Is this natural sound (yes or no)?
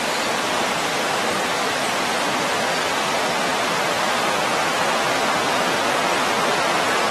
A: yes